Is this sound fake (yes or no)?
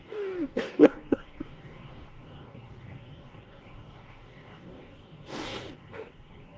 yes